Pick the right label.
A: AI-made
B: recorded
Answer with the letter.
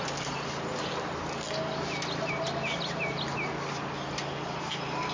B